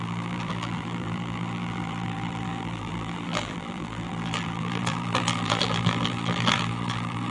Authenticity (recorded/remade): remade